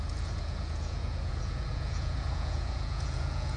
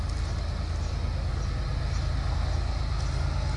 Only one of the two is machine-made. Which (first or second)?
first